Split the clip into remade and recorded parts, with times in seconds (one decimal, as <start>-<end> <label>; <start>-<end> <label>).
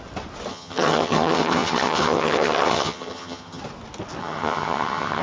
0.0-0.5 recorded; 0.5-3.6 remade; 3.6-4.2 recorded; 4.2-5.2 remade